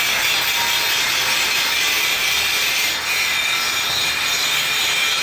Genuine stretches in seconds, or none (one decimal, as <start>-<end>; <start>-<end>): 0.0-2.2; 3.3-5.2